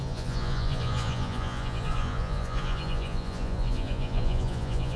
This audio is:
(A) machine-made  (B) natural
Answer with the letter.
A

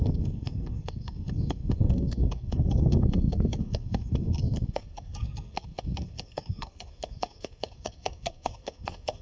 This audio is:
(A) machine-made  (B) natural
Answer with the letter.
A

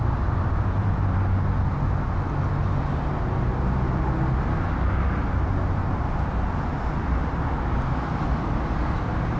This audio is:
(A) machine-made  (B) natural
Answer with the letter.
B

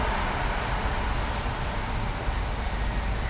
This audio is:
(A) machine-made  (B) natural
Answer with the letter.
B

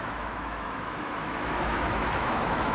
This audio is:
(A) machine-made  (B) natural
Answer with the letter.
A